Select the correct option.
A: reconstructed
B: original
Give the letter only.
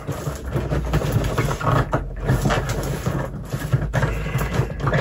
B